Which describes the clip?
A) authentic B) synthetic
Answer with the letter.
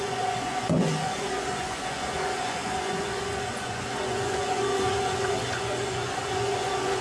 B